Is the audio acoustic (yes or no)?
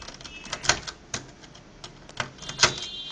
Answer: yes